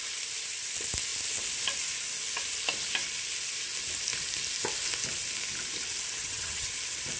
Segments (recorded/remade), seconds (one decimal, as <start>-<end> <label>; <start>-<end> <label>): 0.0-6.2 recorded; 6.2-6.7 remade; 6.7-7.2 recorded